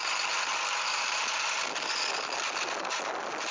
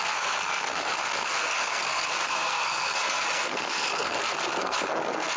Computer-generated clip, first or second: second